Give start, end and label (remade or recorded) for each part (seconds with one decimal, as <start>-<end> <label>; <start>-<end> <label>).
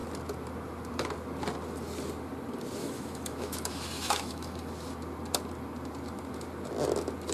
0.0-2.8 recorded; 2.8-4.7 remade; 4.7-7.3 recorded